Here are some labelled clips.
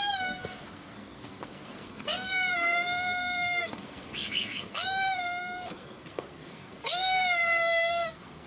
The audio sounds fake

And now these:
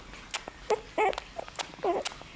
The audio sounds real